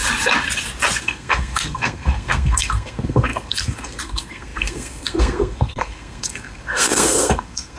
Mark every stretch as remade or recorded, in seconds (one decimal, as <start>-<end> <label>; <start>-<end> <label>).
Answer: 0.0-1.0 recorded; 1.0-7.8 remade